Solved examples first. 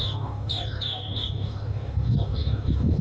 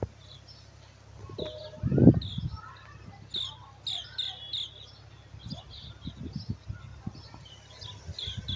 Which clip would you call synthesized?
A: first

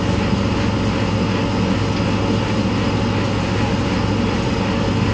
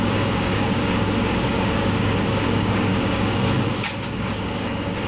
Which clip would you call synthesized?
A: second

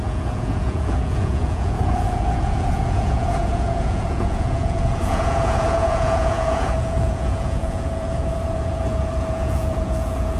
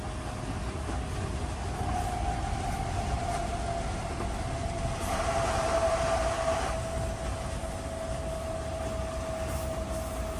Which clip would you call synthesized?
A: first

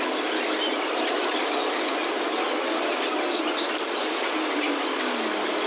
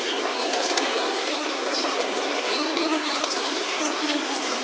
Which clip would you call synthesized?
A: second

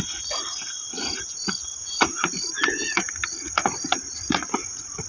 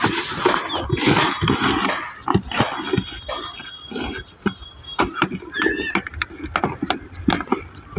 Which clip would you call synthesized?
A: first